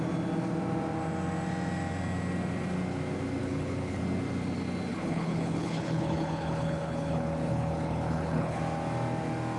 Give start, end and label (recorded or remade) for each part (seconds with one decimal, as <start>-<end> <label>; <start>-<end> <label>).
0.0-3.4 recorded; 3.4-4.0 remade; 4.0-4.9 recorded; 4.9-8.6 remade; 8.6-9.6 recorded